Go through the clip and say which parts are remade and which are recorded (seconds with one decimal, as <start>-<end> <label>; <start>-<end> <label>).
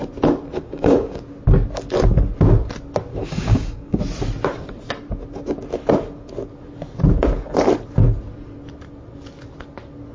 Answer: 0.0-0.5 recorded; 0.5-1.2 remade; 1.2-3.1 recorded; 3.1-4.0 remade; 4.0-10.1 recorded